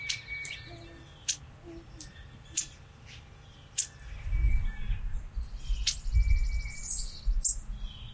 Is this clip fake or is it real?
real